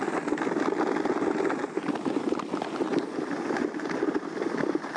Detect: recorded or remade recorded